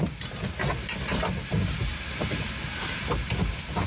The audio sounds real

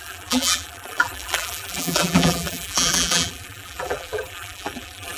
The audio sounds fake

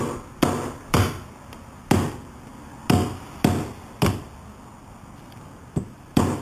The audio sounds real